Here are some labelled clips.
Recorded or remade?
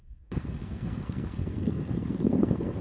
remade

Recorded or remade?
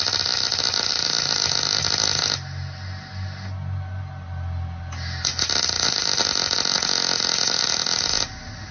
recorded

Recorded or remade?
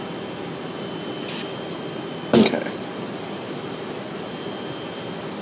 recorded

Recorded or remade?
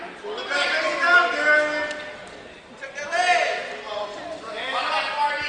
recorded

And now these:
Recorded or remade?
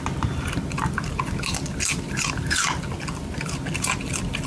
recorded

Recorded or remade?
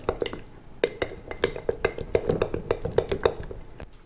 recorded